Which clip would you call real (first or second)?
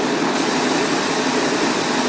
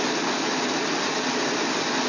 second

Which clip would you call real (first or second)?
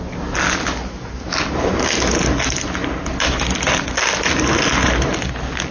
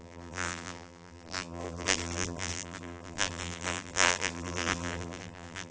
first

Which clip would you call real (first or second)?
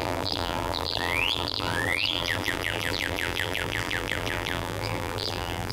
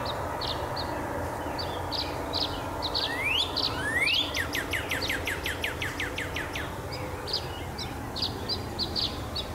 second